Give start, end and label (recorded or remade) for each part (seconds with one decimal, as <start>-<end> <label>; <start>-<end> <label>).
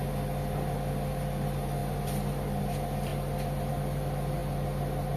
0.0-5.2 recorded